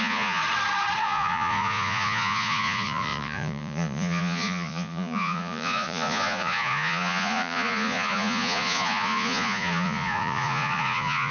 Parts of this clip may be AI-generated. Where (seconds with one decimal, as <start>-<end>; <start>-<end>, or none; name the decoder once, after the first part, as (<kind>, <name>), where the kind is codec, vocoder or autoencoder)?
0.0-0.4 (vocoder, Vocos); 1.0-11.3